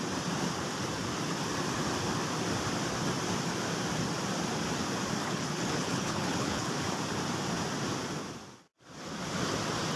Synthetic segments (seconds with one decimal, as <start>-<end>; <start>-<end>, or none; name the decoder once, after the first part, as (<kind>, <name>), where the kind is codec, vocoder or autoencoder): 5.2-6.7 (codec, HILCodec)